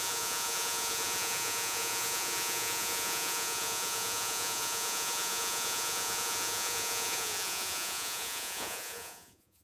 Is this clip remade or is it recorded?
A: remade